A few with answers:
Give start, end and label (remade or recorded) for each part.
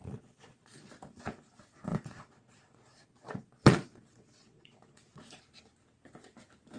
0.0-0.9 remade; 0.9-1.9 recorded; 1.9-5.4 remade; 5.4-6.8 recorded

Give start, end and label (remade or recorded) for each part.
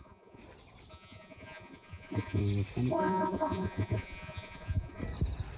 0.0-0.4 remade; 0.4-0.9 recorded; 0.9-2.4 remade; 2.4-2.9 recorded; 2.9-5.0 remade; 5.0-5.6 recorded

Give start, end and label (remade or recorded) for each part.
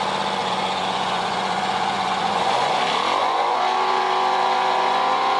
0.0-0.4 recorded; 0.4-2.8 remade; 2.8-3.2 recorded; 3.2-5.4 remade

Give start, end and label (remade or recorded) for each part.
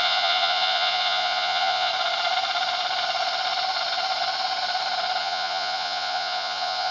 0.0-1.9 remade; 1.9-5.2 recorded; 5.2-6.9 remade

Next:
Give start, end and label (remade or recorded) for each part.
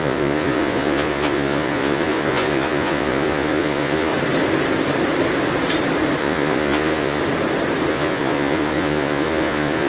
0.0-4.1 remade; 4.1-6.2 recorded; 6.2-7.2 remade; 7.2-7.9 recorded; 7.9-9.9 remade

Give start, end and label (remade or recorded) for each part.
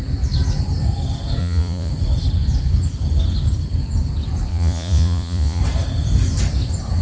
0.0-1.4 recorded; 1.4-1.9 remade; 1.9-4.5 recorded; 4.5-5.6 remade; 5.6-7.0 recorded